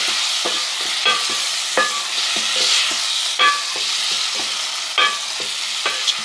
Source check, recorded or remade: recorded